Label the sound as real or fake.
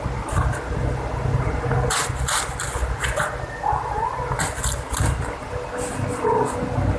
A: real